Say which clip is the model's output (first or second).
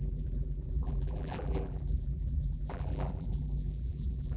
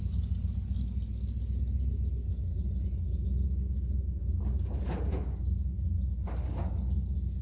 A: first